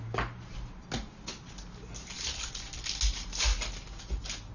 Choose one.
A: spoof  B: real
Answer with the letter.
B